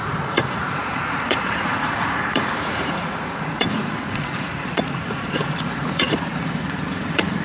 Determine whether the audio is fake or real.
fake